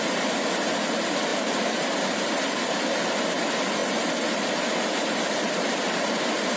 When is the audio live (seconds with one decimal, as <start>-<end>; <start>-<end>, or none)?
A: 0.0-6.6